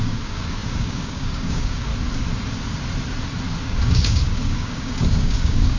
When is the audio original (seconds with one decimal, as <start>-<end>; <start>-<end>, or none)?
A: 1.9-3.6